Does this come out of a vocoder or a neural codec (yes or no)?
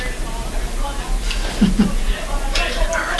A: no